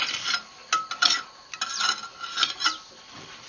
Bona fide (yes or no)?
yes